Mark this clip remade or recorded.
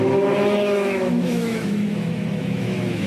remade